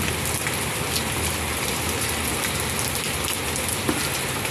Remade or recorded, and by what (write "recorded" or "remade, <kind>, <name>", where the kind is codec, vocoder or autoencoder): recorded